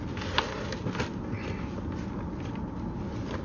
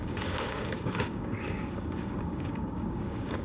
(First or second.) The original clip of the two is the first